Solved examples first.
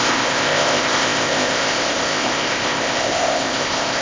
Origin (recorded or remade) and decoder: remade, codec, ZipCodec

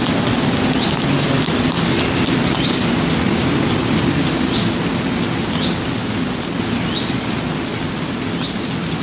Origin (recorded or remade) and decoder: recorded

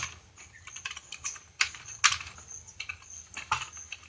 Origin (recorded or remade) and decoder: recorded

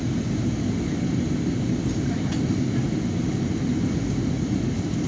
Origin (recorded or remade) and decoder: recorded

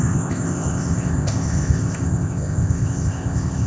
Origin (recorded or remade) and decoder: remade, codec, ZipCodec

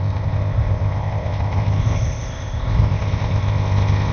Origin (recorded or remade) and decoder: remade, codec, ZipCodec